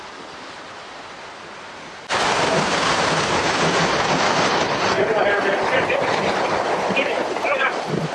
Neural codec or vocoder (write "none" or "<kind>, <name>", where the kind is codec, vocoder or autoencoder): none